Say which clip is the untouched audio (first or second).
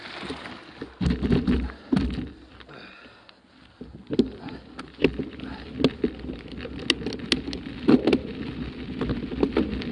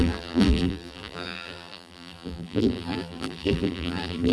first